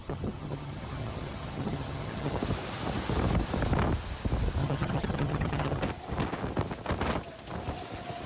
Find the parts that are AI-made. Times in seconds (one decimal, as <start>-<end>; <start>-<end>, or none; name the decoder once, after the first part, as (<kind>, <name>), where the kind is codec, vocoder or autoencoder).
0.0-2.4 (vocoder, HiFi-GAN); 4.6-5.8